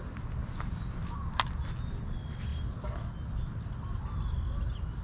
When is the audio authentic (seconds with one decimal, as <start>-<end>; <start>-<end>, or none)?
0.0-5.0